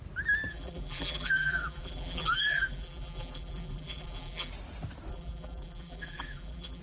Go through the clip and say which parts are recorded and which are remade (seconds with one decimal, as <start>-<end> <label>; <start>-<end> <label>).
0.0-0.5 recorded; 0.5-4.5 remade; 4.5-5.1 recorded; 5.1-6.8 remade